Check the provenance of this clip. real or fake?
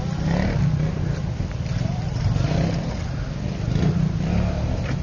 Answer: real